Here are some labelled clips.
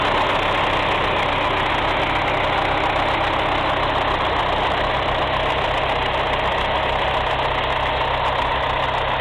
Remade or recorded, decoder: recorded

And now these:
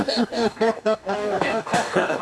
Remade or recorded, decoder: remade, codec, DAC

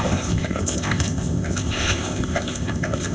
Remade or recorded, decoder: remade, codec, ZipCodec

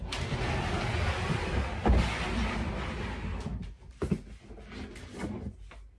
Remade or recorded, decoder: recorded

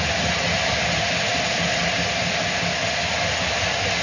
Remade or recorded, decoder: recorded